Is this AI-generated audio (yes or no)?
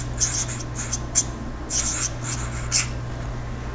no